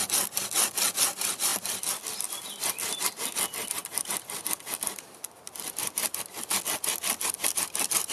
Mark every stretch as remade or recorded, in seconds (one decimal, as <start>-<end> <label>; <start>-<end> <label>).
0.0-8.1 recorded